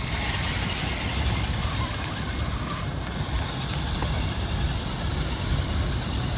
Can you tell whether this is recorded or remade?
recorded